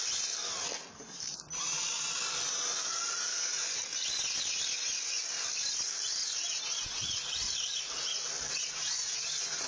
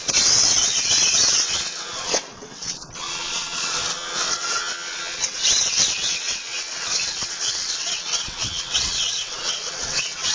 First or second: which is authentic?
first